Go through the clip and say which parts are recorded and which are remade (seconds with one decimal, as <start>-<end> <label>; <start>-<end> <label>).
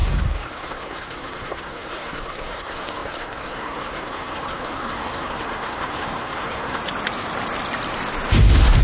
0.0-6.8 remade; 6.8-8.8 recorded